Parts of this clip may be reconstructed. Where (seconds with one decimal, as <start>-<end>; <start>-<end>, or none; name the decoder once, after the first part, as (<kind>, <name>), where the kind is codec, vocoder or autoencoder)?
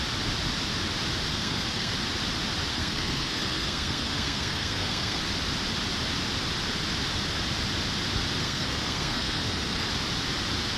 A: 1.3-1.9 (codec, SNAC); 2.7-5.2; 8.4-9.9